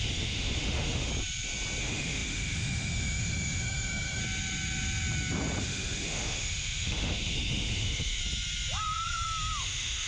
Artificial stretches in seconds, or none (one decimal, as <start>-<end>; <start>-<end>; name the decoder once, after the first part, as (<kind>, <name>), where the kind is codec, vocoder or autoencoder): 0.0-1.1 (autoencoder, DAC-VAE); 1.8-4.2; 5.6-8.2; 9.6-10.1